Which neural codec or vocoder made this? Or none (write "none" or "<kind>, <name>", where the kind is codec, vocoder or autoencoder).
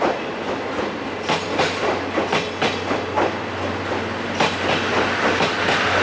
none